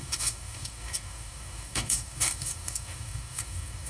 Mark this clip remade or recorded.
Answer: remade